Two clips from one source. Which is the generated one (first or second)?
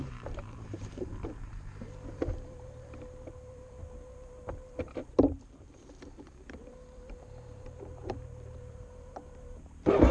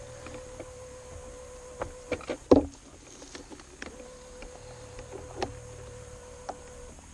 first